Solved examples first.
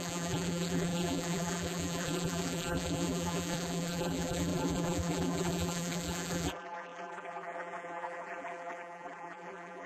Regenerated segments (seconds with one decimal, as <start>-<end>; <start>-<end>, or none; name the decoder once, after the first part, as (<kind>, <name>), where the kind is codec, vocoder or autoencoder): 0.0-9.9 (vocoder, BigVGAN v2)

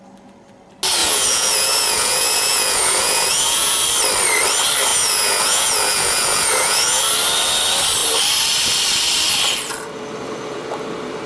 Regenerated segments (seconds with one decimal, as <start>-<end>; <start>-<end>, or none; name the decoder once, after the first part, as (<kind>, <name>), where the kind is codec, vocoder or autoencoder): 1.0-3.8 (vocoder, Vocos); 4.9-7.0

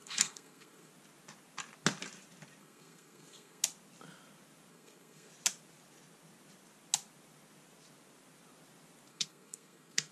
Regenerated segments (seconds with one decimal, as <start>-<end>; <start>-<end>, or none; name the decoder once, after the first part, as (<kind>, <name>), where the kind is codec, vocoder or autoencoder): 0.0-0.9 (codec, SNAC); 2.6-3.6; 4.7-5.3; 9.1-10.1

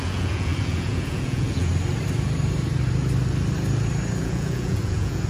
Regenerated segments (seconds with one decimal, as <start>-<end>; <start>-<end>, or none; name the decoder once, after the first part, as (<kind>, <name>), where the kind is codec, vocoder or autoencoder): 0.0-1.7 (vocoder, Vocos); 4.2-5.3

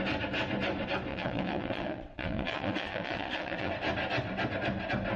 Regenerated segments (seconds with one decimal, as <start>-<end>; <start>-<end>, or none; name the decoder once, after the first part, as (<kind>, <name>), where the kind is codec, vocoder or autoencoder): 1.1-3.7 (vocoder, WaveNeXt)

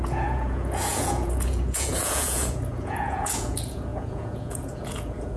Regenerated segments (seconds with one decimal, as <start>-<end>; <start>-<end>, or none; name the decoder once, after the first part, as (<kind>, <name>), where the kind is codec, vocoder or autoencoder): 0.0-5.4 (vocoder, Vocos)

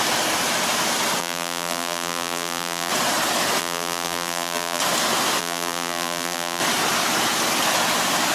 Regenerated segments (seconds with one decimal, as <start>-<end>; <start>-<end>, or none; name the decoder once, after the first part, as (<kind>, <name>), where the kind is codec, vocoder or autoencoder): 1.2-2.9 (vocoder, BigVGAN v2); 3.6-4.8; 5.4-6.6

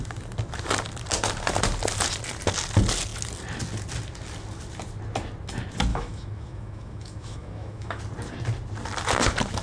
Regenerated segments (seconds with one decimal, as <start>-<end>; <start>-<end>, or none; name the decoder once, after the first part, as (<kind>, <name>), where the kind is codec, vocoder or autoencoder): 5.9-8.0 (autoencoder, DAC-VAE)